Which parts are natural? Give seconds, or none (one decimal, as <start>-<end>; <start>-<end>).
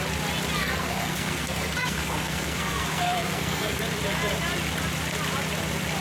0.0-0.6; 3.8-6.0